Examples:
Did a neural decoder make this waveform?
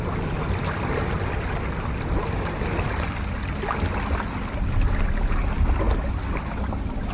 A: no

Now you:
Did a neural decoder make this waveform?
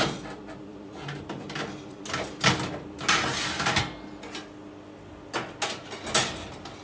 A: no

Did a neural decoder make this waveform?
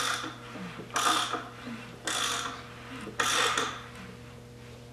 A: no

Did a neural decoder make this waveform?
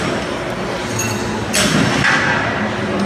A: no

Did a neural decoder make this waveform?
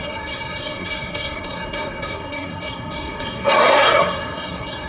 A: yes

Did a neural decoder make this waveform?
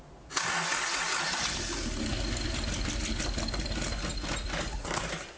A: no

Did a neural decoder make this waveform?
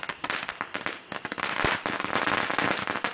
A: no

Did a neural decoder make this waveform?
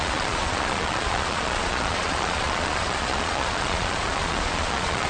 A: yes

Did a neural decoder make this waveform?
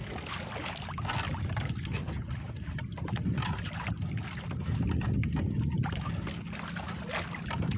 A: no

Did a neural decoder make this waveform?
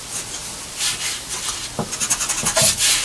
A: no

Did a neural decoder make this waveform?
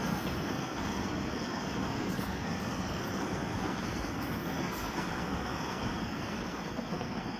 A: yes